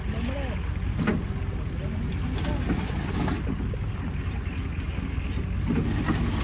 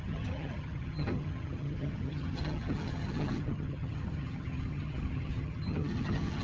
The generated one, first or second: second